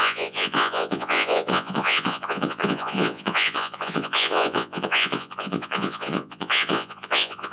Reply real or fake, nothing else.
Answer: fake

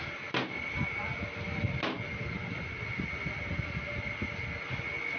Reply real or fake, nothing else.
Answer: real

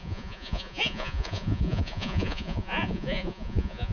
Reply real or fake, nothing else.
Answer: fake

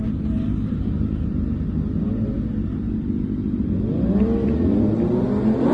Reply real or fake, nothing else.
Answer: real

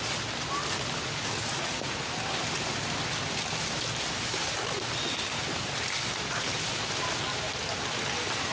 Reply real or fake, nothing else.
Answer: real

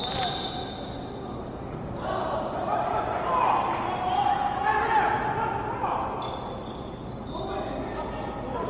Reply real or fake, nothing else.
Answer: real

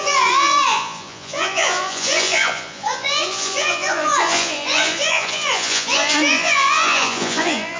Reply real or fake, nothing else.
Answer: fake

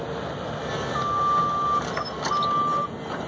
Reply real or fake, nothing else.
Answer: real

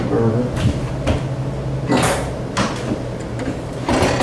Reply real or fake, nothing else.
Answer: real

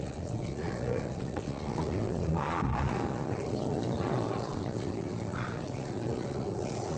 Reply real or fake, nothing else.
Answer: fake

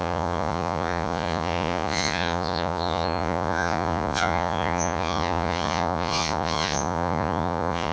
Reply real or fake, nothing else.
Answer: fake